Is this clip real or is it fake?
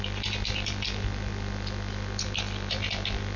real